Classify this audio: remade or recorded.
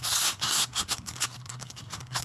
remade